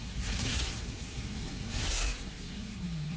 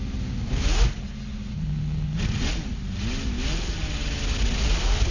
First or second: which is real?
second